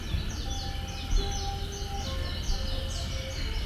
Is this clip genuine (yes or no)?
yes